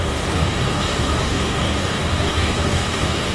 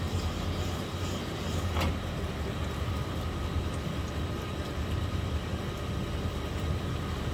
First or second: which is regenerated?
first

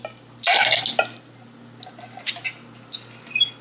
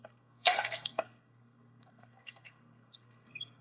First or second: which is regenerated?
second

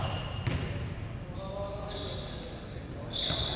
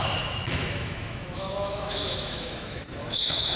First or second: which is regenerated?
second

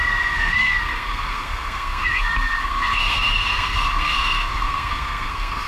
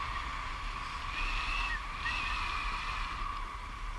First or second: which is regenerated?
first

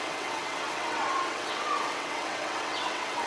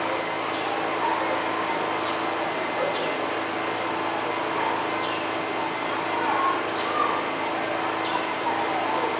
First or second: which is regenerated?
first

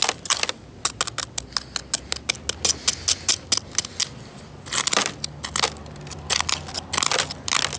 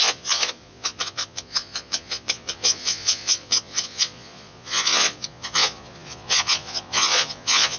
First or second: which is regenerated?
second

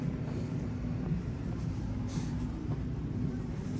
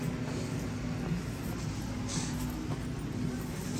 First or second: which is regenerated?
first